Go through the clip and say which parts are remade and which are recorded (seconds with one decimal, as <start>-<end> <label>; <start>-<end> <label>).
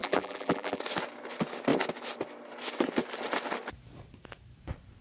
0.0-0.8 remade; 0.8-5.0 recorded